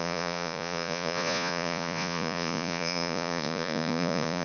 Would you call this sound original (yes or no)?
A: no